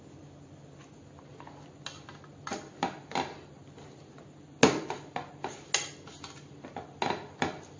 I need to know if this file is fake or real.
real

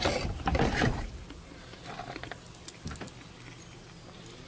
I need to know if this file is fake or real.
real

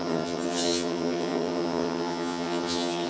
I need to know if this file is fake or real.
fake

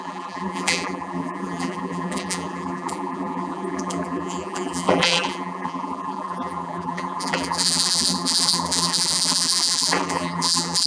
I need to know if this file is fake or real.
fake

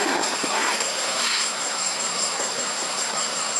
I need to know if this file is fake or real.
fake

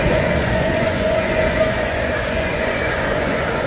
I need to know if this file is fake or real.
fake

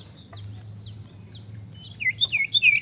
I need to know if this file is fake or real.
real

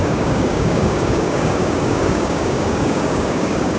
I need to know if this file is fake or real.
fake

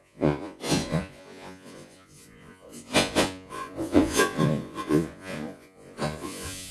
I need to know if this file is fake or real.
fake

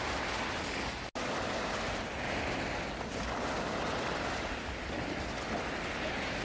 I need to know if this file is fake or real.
real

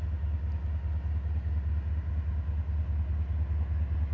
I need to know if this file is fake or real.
real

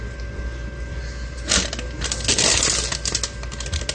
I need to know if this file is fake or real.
real